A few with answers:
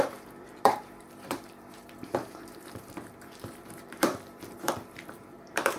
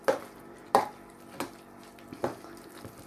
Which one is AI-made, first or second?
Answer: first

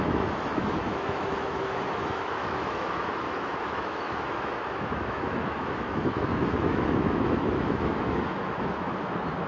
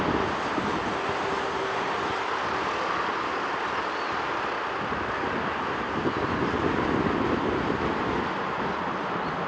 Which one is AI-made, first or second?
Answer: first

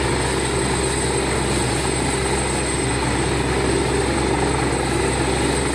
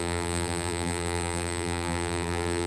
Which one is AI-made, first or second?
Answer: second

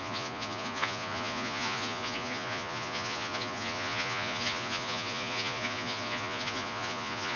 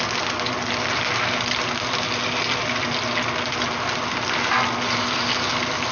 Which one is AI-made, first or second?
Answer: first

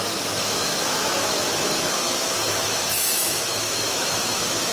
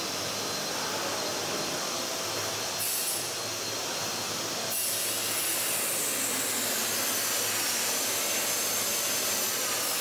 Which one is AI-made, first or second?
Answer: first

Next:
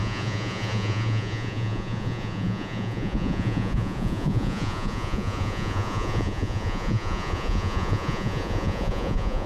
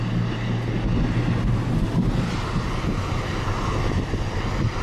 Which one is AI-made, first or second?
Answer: first